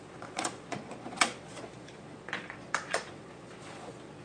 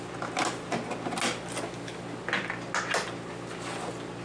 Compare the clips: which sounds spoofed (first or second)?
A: first